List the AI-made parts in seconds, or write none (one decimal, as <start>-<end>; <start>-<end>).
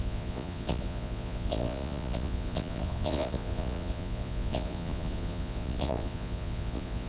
0.0-7.1